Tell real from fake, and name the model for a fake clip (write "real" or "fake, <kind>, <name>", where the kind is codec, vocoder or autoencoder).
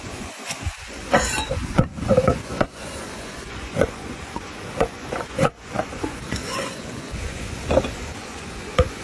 fake, vocoder, Vocos